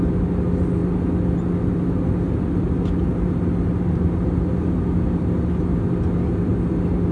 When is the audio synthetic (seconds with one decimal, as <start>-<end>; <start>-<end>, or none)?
none